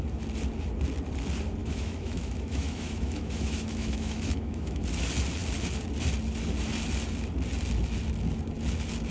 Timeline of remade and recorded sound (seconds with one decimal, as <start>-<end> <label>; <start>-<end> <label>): 0.0-1.6 recorded; 1.6-4.8 remade; 4.8-9.1 recorded